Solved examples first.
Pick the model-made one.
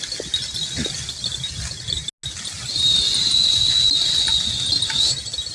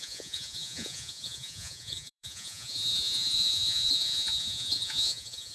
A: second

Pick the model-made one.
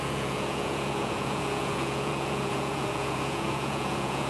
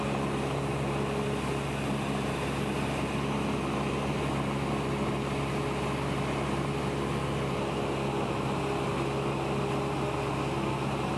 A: first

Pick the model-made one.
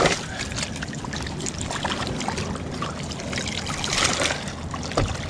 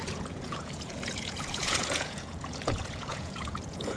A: second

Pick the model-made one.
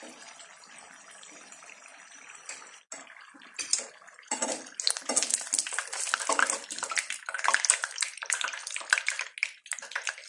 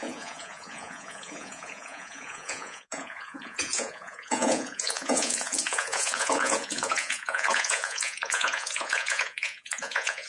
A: second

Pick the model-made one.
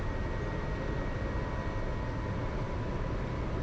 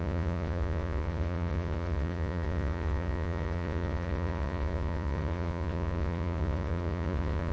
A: second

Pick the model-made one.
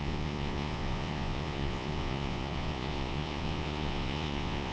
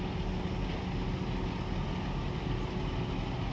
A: first